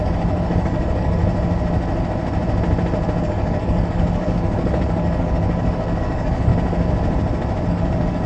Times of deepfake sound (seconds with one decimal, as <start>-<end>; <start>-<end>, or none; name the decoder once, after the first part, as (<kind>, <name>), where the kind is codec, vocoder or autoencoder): 0.0-1.2 (codec, DAC); 3.2-6.5; 7.7-8.3